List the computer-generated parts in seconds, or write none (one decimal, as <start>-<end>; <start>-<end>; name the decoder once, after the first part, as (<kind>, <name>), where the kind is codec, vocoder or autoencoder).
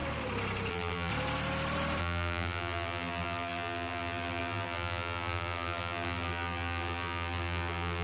0.7-1.1 (vocoder, BigVGAN v2); 2.0-8.0